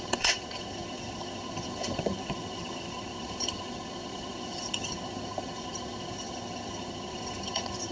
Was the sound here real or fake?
fake